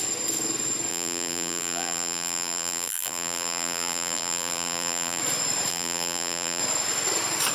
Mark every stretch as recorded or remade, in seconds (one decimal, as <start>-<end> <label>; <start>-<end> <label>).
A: 0.0-0.9 recorded; 0.9-5.2 remade; 5.2-5.7 recorded; 5.7-6.6 remade; 6.6-7.5 recorded